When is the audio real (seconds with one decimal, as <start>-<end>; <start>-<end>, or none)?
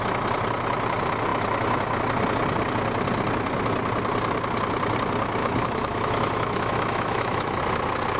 0.0-5.4; 7.6-8.2